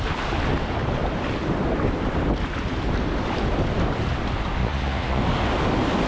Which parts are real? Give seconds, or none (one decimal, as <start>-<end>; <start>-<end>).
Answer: 0.0-4.6; 5.2-6.1